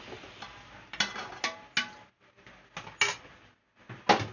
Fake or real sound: real